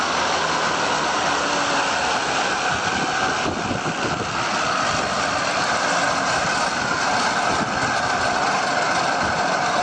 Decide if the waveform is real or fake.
real